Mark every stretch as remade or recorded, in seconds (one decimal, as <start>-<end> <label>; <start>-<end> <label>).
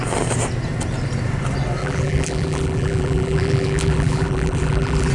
0.0-1.8 recorded; 1.8-5.1 remade